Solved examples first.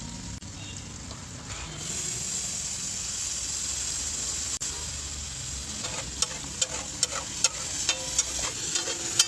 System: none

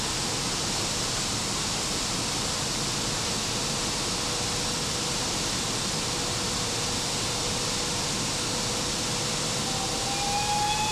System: none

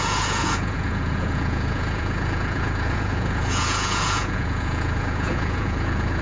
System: vocoder, Vocos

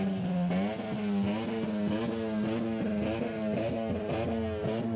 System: none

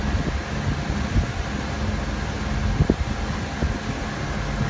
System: none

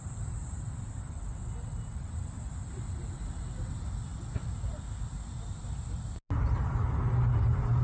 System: none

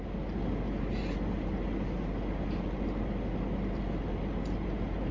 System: none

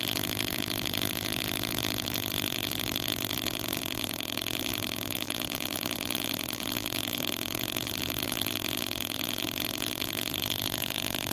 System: vocoder, BigVGAN v2